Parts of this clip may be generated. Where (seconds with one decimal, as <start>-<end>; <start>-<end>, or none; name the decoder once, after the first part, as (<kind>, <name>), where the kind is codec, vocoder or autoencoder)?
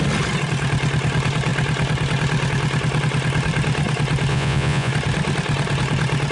4.3-4.9 (vocoder, Vocos)